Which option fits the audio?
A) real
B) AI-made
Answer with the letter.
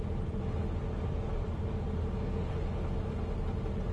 A